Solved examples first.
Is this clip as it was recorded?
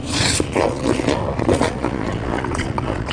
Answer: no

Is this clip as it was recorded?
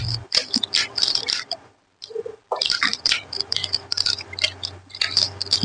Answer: no